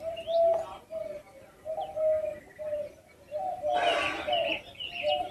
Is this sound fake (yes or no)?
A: no